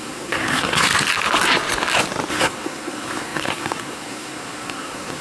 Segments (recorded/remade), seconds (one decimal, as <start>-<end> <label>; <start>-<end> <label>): 0.0-0.9 remade; 0.9-2.3 recorded; 2.3-5.2 remade